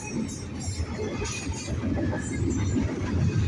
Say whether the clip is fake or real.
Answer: real